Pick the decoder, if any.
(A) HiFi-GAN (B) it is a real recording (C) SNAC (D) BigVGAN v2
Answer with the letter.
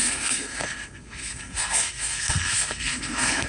C